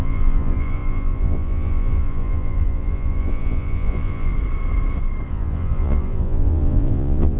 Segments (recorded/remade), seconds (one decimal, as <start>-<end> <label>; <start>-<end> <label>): 0.0-4.3 remade; 4.3-5.3 recorded; 5.3-7.4 remade